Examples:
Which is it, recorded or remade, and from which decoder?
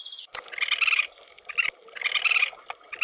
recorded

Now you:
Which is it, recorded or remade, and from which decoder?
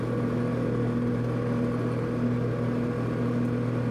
recorded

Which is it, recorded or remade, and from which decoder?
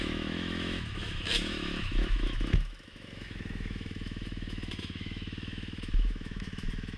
remade, autoencoder, DAC-VAE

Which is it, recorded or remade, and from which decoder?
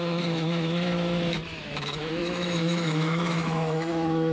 remade, autoencoder, DAC-VAE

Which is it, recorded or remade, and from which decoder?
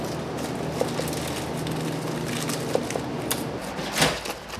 recorded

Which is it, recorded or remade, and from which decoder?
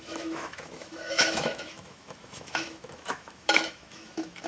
remade, autoencoder, DAC-VAE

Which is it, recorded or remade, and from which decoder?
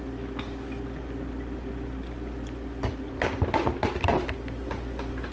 recorded